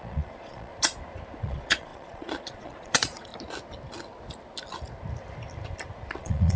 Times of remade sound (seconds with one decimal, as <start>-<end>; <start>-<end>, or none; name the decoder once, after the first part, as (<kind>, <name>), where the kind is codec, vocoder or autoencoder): 0.0-0.7 (vocoder, Vocos); 1.4-3.3; 6.1-6.6